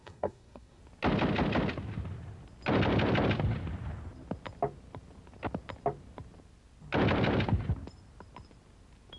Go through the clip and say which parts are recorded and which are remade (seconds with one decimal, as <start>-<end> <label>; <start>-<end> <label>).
0.0-0.8 remade; 0.8-9.2 recorded